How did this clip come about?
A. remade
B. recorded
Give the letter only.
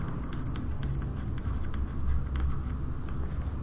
B